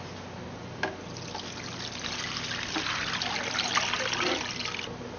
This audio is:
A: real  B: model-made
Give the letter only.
A